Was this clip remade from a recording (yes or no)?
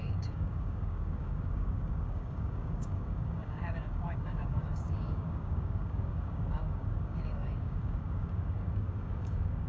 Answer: yes